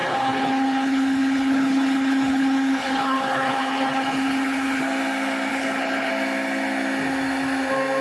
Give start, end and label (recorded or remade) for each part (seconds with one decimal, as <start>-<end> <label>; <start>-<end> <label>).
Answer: 0.0-4.8 remade; 4.8-5.5 recorded; 5.5-6.1 remade; 6.1-8.0 recorded